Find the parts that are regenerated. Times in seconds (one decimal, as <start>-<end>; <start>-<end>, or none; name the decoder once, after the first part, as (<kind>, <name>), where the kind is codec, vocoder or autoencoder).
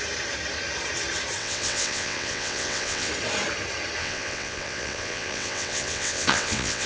1.4-3.1 (vocoder, WaveNeXt); 4.0-6.9